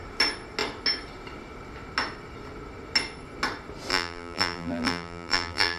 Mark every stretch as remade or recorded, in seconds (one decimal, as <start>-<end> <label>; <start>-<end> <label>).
0.0-3.9 recorded; 3.9-5.8 remade